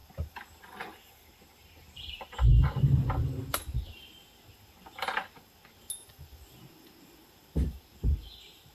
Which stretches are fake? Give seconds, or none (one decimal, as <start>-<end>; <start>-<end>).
none